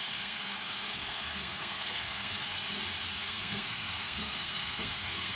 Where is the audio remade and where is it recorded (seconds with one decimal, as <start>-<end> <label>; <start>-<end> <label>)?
0.0-2.6 remade; 2.6-3.2 recorded; 3.2-5.4 remade